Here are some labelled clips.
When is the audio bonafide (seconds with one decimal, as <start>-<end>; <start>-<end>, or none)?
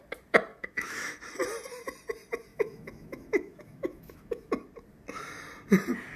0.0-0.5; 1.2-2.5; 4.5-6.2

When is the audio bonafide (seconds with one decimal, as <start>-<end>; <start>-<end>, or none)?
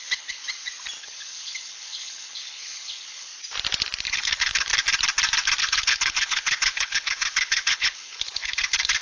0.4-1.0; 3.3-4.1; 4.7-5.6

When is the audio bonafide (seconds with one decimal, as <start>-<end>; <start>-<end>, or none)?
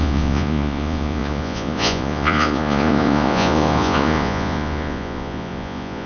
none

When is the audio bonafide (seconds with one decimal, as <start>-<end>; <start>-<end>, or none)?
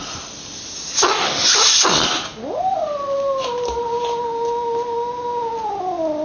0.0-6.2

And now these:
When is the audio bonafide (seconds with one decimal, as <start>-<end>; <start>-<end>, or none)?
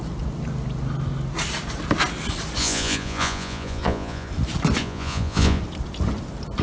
0.0-2.6; 4.3-4.8; 5.6-6.6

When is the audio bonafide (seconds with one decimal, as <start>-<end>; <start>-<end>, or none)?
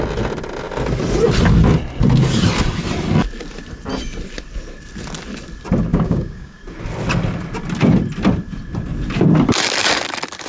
0.0-5.9; 6.6-10.5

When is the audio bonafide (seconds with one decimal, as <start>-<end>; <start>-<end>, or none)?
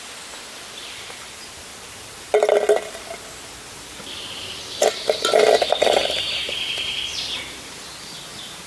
0.0-1.7; 2.5-6.0; 8.0-8.7